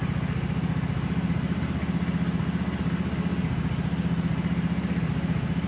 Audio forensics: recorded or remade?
recorded